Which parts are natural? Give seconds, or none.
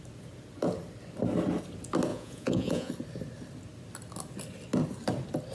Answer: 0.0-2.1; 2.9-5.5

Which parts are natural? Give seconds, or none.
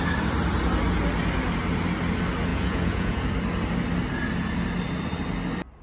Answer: 0.0-2.5; 3.2-5.8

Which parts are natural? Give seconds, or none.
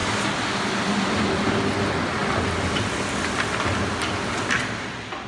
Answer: 0.0-5.3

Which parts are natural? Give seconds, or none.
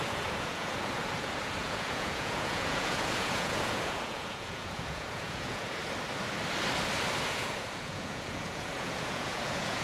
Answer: 5.8-7.3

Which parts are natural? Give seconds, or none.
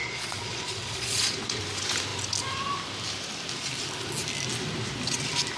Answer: 1.6-5.6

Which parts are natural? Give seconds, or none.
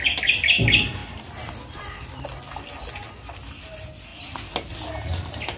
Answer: 0.0-5.6